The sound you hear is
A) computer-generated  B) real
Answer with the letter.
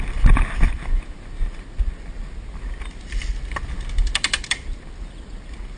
B